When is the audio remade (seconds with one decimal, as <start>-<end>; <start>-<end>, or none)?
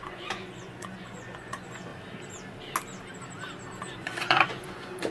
0.0-1.9; 3.9-5.1